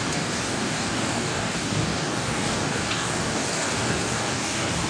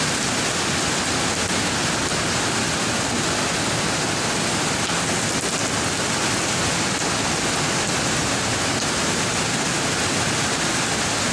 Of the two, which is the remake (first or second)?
first